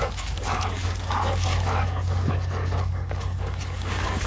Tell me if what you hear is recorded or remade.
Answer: remade